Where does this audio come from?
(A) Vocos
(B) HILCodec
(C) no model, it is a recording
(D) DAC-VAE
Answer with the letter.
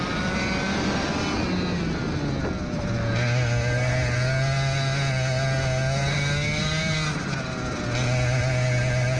C